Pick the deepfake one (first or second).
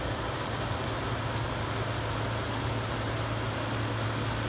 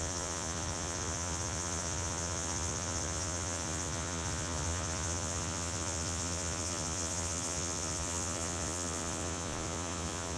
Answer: second